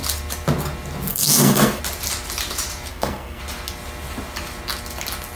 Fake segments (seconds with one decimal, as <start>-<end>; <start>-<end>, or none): 1.1-1.8; 2.9-3.4